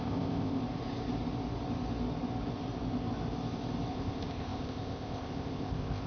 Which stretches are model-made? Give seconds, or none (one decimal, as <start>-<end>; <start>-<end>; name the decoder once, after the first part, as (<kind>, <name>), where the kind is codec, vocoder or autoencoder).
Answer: 0.0-0.6 (codec, ZipCodec); 3.9-6.1